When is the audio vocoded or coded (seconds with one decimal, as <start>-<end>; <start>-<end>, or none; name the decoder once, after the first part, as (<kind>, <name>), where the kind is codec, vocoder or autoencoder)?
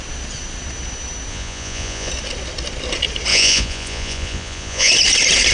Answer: 1.3-2.1 (vocoder, Vocos); 3.3-4.9